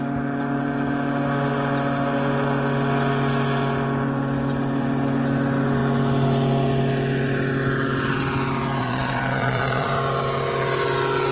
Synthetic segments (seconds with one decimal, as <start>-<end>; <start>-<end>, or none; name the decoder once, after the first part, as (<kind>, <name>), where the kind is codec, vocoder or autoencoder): 8.8-9.9 (vocoder, Vocos)